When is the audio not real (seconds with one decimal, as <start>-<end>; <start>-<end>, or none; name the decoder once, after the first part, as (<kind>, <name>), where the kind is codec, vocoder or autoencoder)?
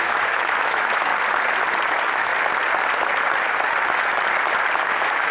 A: 0.0-1.1 (autoencoder, DAC-VAE); 1.9-2.3; 4.8-5.3